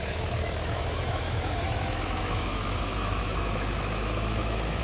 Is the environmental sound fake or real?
fake